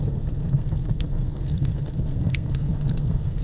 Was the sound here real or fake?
fake